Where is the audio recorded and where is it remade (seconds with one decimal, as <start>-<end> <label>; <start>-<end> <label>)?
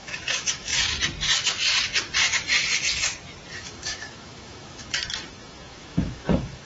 0.0-0.7 remade; 0.7-3.5 recorded; 3.5-6.6 remade